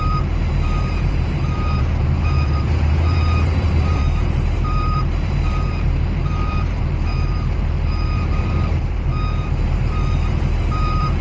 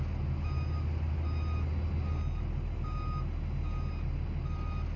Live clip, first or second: second